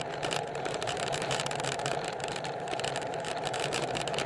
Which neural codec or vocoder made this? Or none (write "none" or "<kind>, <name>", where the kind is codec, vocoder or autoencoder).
vocoder, BigVGAN v2